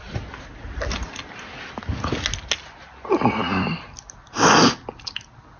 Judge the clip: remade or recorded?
recorded